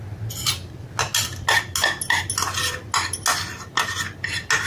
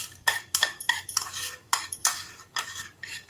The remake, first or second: second